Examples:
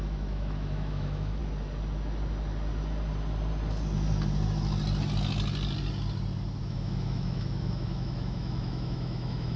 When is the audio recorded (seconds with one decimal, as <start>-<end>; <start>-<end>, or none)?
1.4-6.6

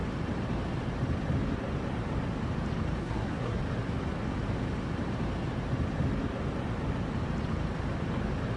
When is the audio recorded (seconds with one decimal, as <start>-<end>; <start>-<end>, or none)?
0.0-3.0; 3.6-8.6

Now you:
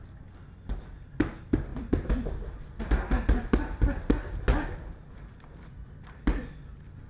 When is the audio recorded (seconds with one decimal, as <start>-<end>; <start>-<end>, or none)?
0.0-7.1

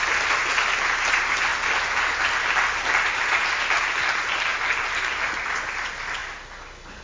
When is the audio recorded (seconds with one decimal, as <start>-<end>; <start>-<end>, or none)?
0.0-7.0

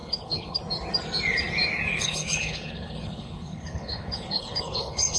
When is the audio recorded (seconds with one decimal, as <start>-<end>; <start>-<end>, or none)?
0.6-1.9

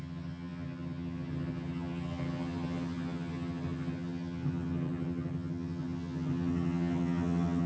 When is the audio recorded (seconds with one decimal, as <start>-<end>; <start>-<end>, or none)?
none

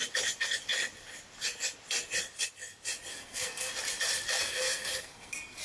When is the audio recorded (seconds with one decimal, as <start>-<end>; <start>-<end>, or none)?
0.0-3.1; 3.7-4.4

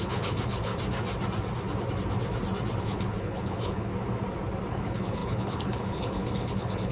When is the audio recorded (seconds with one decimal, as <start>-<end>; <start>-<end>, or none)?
0.7-2.8; 3.9-4.7